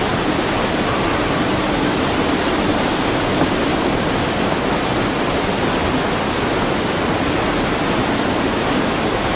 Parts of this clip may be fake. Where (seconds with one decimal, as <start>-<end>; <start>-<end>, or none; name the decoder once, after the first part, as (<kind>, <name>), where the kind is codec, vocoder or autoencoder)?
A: none